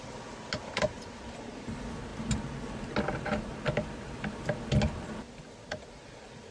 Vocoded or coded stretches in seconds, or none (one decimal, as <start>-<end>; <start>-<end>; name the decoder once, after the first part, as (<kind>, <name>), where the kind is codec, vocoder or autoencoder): none